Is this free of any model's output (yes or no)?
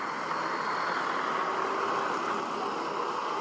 yes